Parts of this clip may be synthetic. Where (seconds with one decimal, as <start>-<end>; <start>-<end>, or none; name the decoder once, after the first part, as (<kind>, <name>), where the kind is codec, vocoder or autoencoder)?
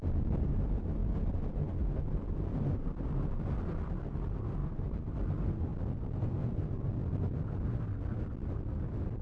4.6-5.1 (vocoder, BigVGAN v2)